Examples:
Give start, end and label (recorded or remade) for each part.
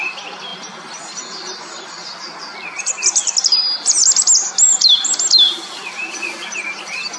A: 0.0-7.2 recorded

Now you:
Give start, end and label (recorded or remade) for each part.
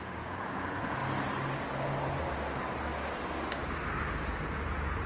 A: 0.0-1.0 remade; 1.0-4.1 recorded; 4.1-5.1 remade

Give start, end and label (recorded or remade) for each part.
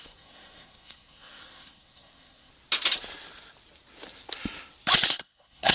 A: 0.0-2.5 remade; 2.5-5.1 recorded; 5.1-5.7 remade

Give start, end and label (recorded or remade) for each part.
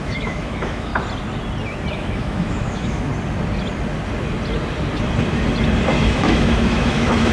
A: 0.0-0.9 remade; 0.9-1.9 recorded; 1.9-3.1 remade; 3.1-6.0 recorded; 6.0-7.3 remade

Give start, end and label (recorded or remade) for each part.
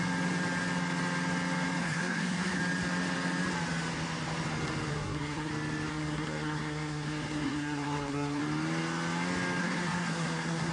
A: 0.0-1.8 recorded; 1.8-2.6 remade; 2.6-4.9 recorded; 4.9-5.5 remade; 5.5-5.9 recorded; 5.9-8.4 remade; 8.4-9.6 recorded; 9.6-10.7 remade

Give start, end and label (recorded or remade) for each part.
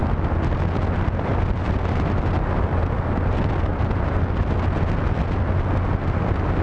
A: 0.0-3.7 recorded; 3.7-4.2 remade; 4.2-6.6 recorded